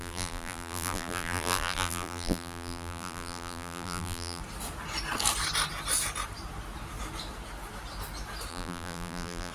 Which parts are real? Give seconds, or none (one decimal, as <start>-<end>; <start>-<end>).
4.4-8.5